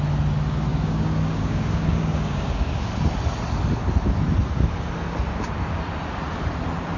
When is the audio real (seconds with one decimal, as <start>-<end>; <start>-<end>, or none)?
0.0-0.7; 2.9-7.0